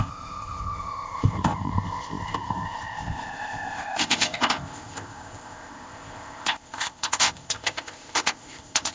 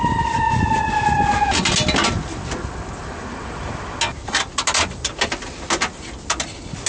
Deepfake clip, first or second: first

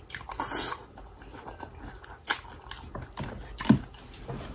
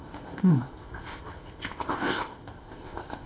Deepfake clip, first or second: second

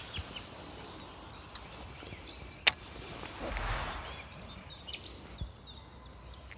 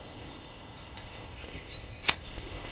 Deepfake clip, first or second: second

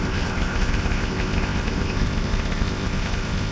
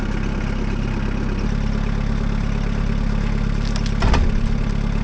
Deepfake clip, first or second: first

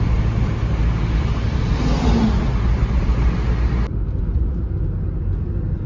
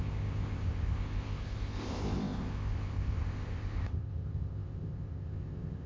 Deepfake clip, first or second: second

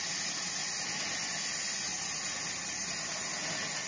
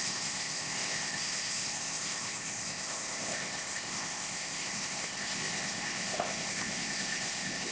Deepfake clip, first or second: second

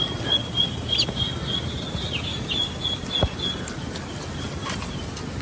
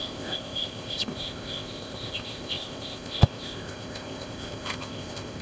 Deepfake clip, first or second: second